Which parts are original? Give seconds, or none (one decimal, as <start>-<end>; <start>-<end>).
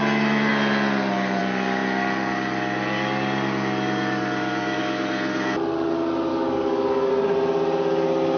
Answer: 0.0-6.3; 7.1-8.4